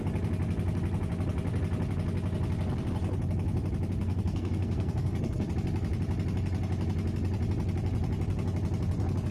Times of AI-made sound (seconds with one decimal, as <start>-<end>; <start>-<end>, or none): 4.0-5.5